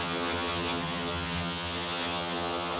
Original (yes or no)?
no